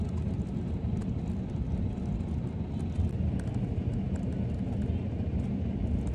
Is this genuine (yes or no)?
yes